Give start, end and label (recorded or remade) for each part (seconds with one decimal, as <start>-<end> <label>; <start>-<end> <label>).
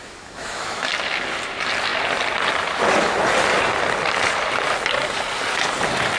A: 0.0-0.9 remade; 0.9-6.2 recorded